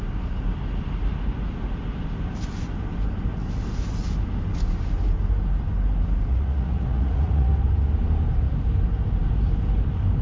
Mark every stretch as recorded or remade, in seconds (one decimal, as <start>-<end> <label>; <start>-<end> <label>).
0.0-6.3 recorded; 6.3-7.5 remade; 7.5-10.2 recorded